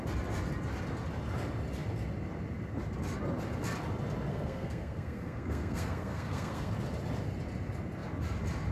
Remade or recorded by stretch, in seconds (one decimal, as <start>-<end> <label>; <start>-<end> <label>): 0.0-4.3 recorded; 4.3-6.7 remade; 6.7-8.7 recorded